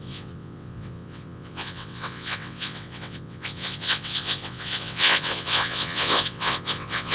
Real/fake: fake